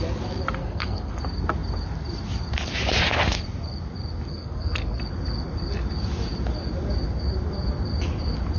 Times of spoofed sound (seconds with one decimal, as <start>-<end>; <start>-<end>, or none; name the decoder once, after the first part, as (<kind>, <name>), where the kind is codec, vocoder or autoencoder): 0.6-1.2 (codec, SNAC); 4.3-5.0